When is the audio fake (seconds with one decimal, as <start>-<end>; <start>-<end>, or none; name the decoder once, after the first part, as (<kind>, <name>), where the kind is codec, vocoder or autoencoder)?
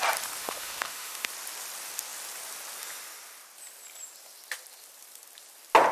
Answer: 0.4-1.3 (autoencoder, DAC-VAE)